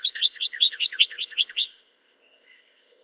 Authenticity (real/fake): fake